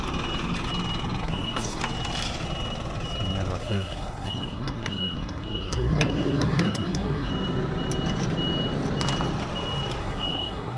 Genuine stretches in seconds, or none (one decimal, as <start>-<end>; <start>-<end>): 0.0-1.2; 1.8-3.6; 7.3-10.0